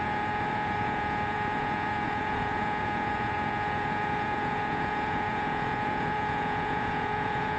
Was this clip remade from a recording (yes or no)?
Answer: yes